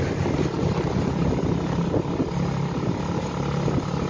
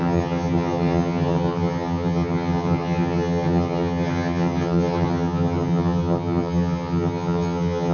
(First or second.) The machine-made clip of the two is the second